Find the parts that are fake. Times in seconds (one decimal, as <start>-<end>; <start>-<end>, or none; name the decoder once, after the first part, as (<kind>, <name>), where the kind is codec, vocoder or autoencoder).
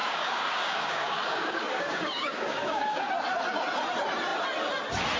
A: 0.0-3.1 (codec, DAC)